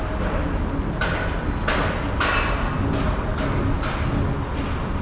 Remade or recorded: recorded